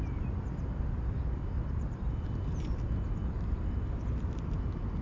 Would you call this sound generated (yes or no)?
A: yes